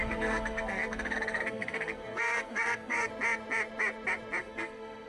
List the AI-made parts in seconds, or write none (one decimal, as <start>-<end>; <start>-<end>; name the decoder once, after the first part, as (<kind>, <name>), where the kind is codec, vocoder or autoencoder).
0.0-3.1 (codec, SNAC); 4.4-5.1